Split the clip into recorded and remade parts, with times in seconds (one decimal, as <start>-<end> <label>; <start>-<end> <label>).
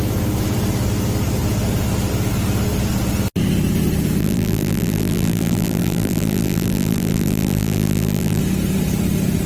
0.0-4.2 recorded; 4.2-8.4 remade; 8.4-9.5 recorded